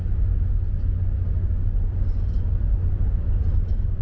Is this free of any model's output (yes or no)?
yes